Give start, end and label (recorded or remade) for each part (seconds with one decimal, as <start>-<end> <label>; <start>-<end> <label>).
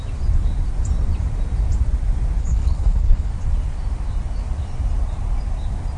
0.0-2.4 recorded; 2.4-3.3 remade; 3.3-6.0 recorded